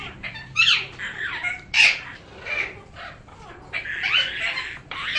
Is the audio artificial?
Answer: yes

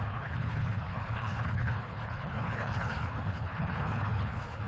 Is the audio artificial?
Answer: yes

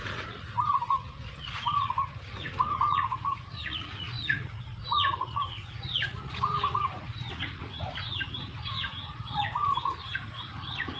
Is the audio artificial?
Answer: yes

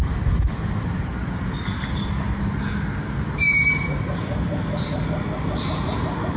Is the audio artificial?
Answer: no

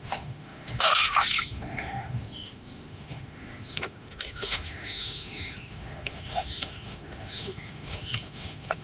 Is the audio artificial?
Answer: yes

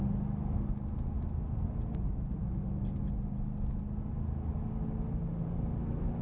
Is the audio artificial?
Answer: no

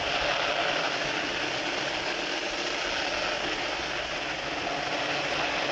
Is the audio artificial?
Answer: no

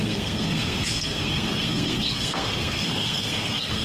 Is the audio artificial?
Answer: yes